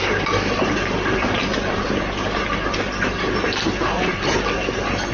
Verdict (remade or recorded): recorded